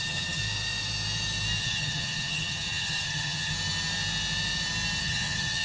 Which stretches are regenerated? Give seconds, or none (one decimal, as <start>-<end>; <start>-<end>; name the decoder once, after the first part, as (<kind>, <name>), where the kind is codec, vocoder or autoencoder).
0.0-0.4 (vocoder, HiFi-GAN); 1.6-3.5; 5.0-5.6